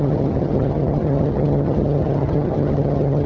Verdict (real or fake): fake